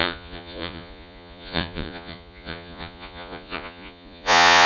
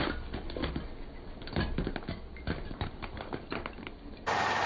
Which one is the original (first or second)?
second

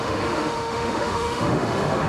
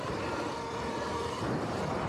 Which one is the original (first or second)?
second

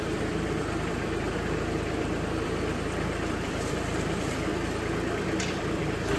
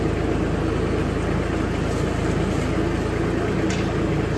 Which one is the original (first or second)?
second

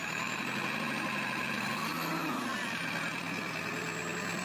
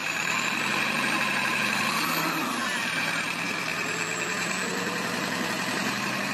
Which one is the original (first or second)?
first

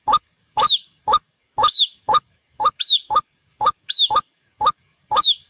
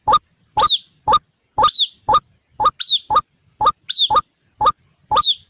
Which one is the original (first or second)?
second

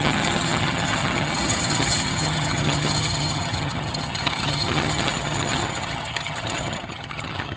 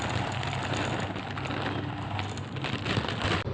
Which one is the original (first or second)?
second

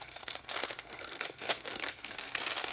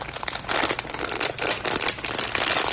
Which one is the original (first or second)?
second